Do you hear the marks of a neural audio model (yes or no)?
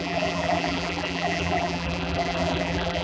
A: yes